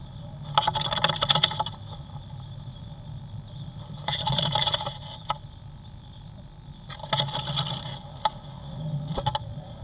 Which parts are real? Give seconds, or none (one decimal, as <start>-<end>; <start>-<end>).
0.0-4.0; 5.3-9.8